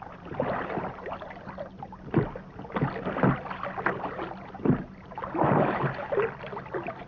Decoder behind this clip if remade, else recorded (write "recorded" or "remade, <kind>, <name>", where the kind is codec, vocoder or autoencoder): recorded